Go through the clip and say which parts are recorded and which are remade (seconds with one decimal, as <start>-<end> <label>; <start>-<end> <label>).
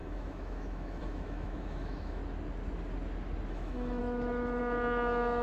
0.0-2.2 remade; 2.2-3.5 recorded; 3.5-5.4 remade